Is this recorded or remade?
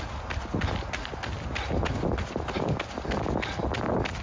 recorded